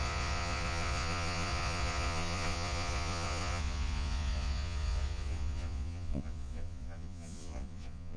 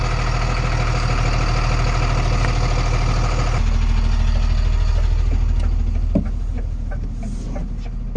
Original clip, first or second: second